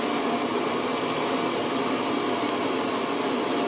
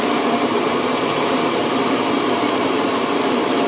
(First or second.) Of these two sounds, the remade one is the second